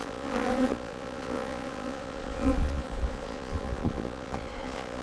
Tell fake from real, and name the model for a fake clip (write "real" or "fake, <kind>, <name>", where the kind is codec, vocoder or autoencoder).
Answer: fake, vocoder, Vocos